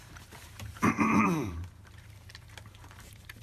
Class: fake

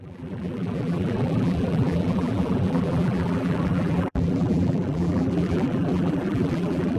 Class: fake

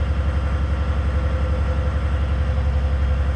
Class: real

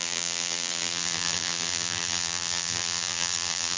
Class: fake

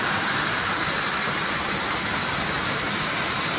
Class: fake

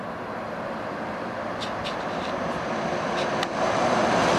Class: fake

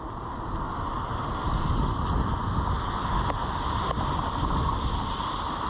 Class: real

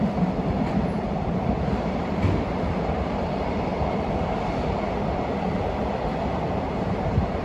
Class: fake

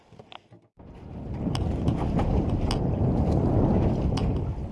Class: real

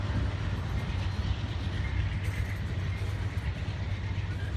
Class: real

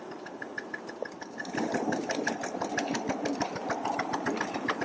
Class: real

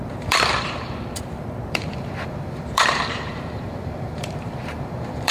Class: fake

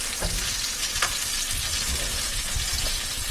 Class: real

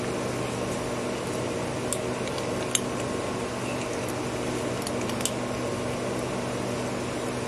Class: real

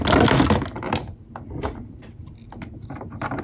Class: real